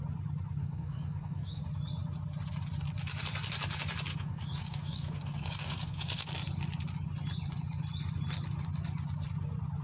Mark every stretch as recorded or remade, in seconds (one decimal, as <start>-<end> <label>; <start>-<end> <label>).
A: 0.0-0.6 recorded; 0.6-1.6 remade; 1.6-4.1 recorded; 4.1-6.3 remade; 6.3-9.8 recorded